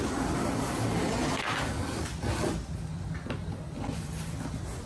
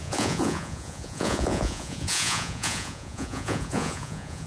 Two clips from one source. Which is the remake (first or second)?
second